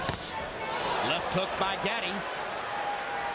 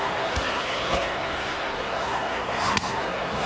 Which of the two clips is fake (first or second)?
second